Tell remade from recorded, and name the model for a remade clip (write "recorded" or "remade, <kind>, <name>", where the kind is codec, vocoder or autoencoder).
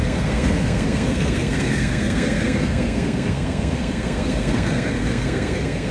remade, codec, SNAC